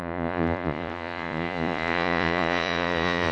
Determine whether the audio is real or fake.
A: fake